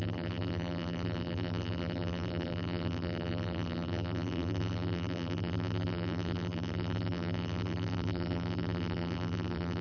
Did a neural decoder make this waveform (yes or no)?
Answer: yes